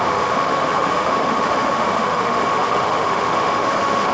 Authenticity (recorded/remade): remade